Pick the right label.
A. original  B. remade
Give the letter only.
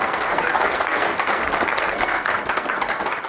B